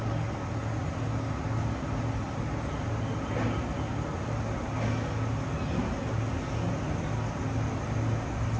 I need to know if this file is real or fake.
real